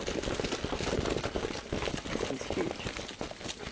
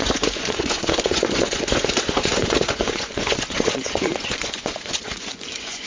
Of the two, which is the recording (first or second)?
first